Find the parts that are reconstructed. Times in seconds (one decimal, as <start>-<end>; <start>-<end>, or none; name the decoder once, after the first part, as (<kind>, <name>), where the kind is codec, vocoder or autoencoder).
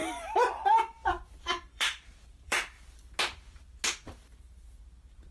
0.0-3.0 (vocoder, BigVGAN v2)